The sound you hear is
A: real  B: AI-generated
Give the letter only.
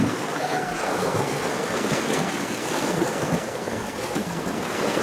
B